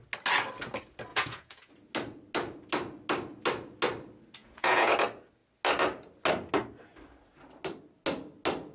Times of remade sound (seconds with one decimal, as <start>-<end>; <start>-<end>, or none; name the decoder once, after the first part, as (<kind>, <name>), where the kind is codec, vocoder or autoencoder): 1.1-1.7 (vocoder, Vocos); 4.4-4.9